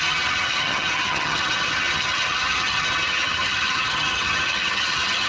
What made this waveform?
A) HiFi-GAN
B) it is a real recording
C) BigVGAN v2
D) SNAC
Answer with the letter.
A